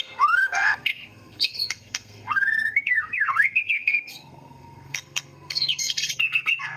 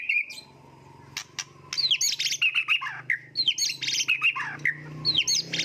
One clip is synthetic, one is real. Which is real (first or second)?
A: second